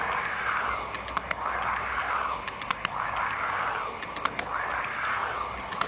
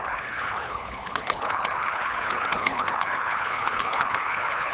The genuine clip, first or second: first